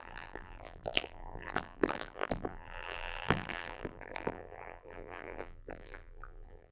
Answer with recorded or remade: remade